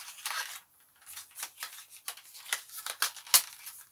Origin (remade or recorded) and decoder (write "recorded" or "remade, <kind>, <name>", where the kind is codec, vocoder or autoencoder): recorded